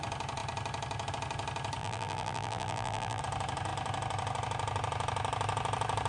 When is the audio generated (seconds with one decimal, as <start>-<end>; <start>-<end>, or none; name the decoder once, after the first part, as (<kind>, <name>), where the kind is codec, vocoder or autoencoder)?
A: 1.8-3.2 (vocoder, BigVGAN v2)

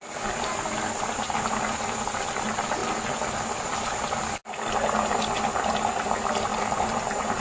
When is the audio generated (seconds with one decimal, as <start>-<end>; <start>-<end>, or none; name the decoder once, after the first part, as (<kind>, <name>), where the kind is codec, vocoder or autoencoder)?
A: 2.8-3.7 (vocoder, BigVGAN v2); 6.5-7.4

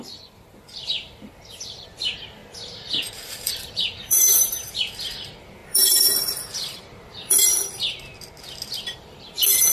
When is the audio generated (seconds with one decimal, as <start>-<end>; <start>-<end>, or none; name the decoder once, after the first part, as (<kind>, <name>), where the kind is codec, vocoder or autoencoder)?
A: 0.0-7.5 (vocoder, BigVGAN v2); 8.8-9.7

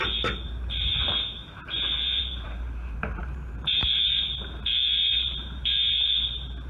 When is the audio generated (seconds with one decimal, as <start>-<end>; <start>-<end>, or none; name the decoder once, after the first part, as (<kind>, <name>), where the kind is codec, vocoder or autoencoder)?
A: 0.0-6.7 (vocoder, BigVGAN v2)

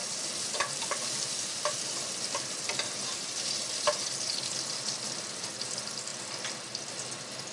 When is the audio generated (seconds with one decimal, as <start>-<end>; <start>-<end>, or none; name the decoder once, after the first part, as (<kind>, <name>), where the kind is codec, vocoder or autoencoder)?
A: 0.0-3.5 (vocoder, BigVGAN v2); 6.1-6.7